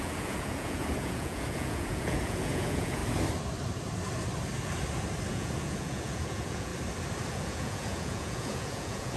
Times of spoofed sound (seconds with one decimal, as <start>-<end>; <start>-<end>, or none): 0.0-3.0; 5.3-6.7; 7.3-9.2